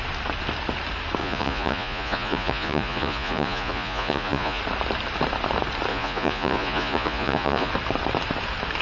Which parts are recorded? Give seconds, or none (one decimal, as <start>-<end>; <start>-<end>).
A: 0.0-1.2; 4.6-5.9; 7.7-8.8